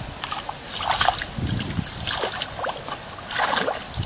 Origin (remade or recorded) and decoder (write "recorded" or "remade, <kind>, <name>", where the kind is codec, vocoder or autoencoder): recorded